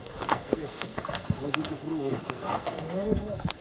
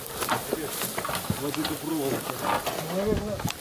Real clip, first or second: second